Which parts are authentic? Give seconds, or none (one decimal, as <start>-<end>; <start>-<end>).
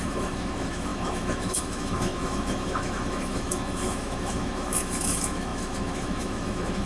none